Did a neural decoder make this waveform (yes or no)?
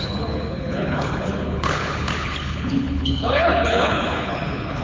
yes